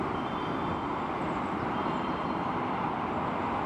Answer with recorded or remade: remade